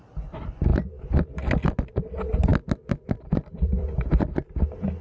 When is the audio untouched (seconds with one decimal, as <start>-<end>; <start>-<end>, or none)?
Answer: 0.0-2.5; 4.3-5.0